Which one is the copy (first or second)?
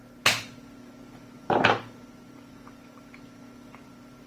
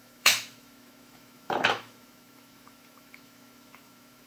second